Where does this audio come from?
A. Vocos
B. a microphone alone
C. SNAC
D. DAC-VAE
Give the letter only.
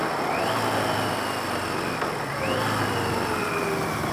B